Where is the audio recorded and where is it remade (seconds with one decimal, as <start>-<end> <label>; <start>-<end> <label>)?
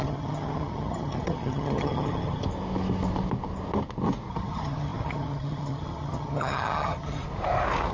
0.0-2.4 remade; 2.4-4.3 recorded; 4.3-7.2 remade; 7.2-7.9 recorded